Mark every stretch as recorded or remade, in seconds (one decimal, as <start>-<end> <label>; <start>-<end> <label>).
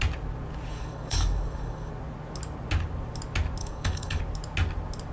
0.0-0.7 recorded; 0.7-1.9 remade; 1.9-3.6 recorded; 3.6-4.2 remade; 4.2-5.1 recorded